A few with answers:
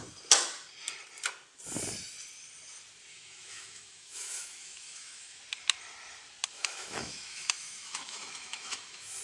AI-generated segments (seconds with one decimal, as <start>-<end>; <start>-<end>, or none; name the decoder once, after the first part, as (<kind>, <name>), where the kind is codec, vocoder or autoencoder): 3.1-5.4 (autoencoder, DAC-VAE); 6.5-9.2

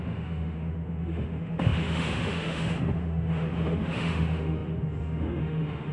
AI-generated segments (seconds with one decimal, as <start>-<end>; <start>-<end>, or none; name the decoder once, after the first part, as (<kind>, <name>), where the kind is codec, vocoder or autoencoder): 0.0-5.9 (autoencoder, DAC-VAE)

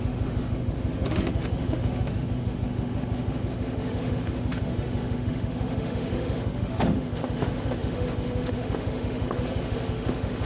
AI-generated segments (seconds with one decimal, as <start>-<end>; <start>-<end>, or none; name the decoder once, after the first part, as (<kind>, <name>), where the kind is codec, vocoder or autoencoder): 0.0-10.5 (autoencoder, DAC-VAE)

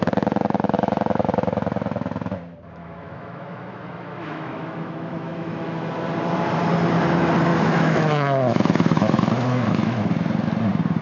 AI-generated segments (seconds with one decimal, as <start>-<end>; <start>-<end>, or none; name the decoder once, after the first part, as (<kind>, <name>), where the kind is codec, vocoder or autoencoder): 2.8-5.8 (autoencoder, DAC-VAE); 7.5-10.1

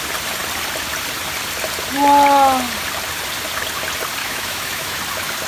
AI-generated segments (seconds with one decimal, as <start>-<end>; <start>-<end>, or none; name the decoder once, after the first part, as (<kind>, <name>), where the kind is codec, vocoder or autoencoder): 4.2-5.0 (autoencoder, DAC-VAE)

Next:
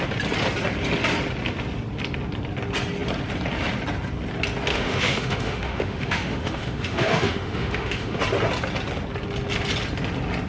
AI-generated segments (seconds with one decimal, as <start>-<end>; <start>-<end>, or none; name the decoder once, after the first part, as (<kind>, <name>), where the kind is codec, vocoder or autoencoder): 4.7-8.2 (autoencoder, DAC-VAE)

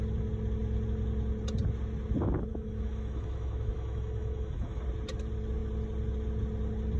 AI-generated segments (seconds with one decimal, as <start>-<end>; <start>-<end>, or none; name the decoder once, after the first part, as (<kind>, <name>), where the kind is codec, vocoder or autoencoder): 2.5-4.8 (autoencoder, DAC-VAE)